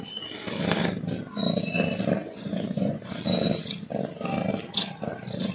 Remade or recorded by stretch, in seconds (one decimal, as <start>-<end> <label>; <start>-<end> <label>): 0.0-2.2 recorded; 2.2-3.1 remade; 3.1-5.5 recorded